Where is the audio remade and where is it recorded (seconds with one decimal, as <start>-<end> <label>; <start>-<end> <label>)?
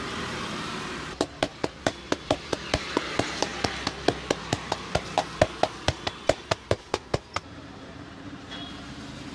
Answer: 0.0-3.5 remade; 3.5-4.4 recorded; 4.4-5.2 remade; 5.2-6.7 recorded; 6.7-9.3 remade